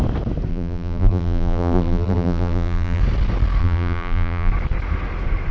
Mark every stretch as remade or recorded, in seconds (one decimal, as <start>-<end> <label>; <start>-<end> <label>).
0.0-0.5 recorded; 0.5-3.0 remade; 3.0-3.6 recorded; 3.6-4.5 remade; 4.5-5.5 recorded